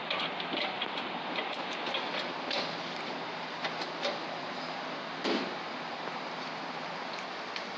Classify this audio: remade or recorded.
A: recorded